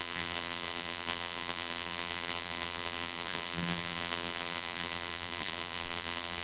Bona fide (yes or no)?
no